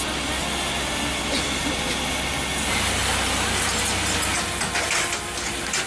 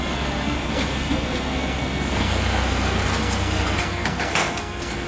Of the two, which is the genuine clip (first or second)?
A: first